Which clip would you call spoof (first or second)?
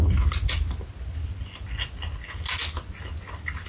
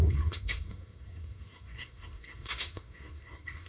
second